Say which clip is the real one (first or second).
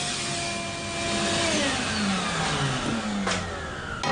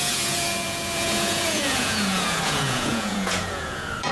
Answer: first